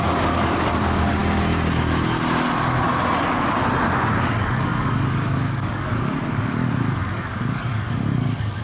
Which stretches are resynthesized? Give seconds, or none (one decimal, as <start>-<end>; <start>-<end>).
0.0-1.2; 4.2-8.6